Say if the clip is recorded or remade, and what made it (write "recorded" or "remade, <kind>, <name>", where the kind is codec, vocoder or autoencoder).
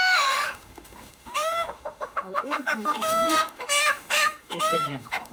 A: remade, autoencoder, DAC-VAE